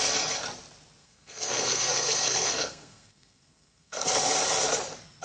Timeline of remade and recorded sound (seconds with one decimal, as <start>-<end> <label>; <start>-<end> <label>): 0.0-1.0 recorded; 1.0-4.1 remade; 4.1-5.2 recorded